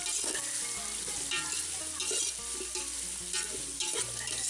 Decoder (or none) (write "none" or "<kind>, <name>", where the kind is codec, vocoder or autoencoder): none